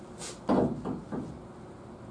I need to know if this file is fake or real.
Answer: real